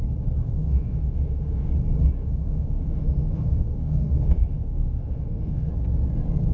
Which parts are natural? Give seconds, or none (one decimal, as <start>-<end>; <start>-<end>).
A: 0.0-0.4; 1.7-2.2; 5.7-6.5